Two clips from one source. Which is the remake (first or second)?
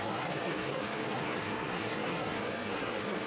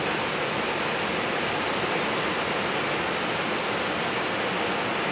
first